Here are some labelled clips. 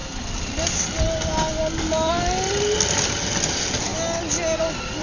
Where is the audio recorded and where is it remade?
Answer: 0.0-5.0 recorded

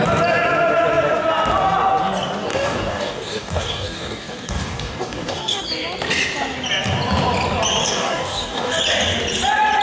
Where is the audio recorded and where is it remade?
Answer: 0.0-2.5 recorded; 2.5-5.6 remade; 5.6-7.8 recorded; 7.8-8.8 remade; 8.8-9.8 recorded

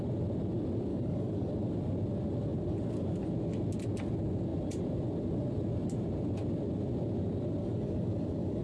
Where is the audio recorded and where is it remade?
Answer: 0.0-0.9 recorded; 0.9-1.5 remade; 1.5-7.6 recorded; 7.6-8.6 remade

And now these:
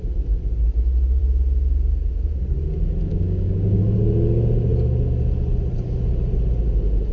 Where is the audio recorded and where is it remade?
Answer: 0.0-3.1 recorded; 3.1-3.8 remade; 3.8-7.1 recorded

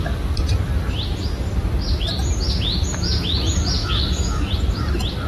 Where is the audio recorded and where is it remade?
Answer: 0.0-3.8 recorded; 3.8-4.5 remade; 4.5-5.3 recorded

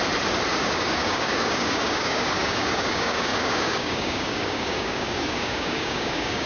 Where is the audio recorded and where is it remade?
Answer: 0.0-0.5 recorded; 0.5-6.5 remade

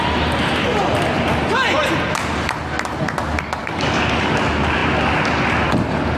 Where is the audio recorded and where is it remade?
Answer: 0.0-3.6 recorded; 3.6-4.3 remade; 4.3-6.2 recorded